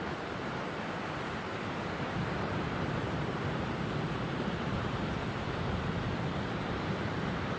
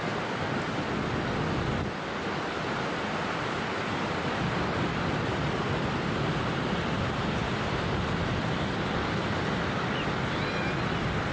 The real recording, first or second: second